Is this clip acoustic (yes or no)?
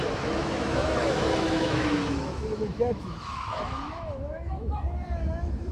no